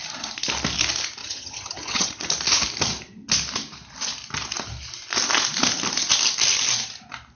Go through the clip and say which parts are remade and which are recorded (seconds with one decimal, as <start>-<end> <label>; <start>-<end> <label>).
0.0-1.2 recorded; 1.2-2.1 remade; 2.1-7.3 recorded